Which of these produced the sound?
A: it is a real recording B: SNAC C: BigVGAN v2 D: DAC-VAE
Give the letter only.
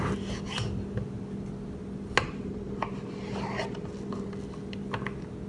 A